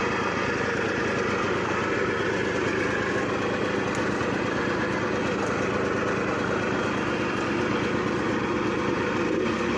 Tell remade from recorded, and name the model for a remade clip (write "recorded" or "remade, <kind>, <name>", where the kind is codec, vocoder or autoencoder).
recorded